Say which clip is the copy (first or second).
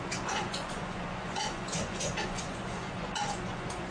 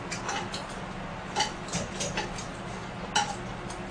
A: first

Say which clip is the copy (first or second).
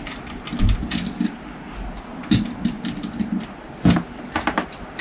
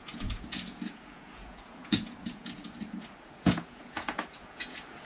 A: second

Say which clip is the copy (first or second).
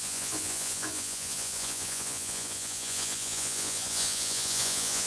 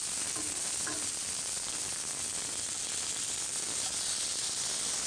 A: first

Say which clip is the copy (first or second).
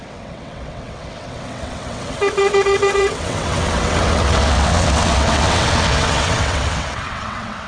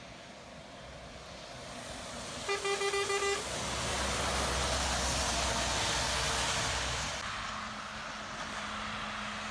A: first